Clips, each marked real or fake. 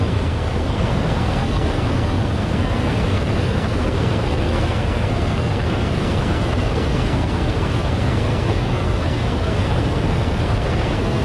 fake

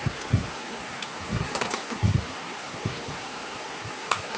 fake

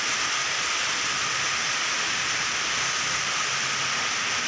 real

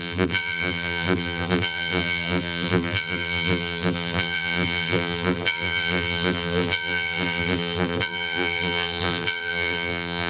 fake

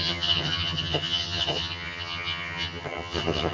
fake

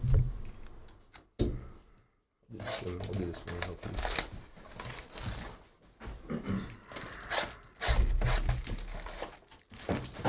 real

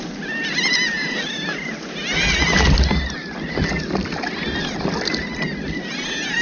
real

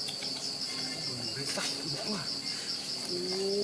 real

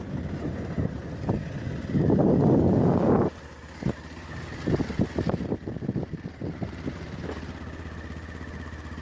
real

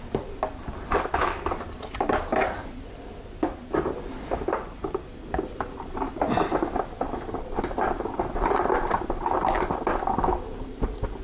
real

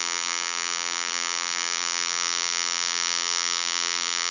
fake